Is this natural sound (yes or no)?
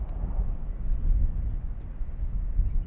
yes